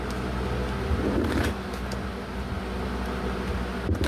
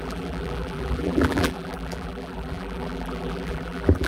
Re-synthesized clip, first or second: second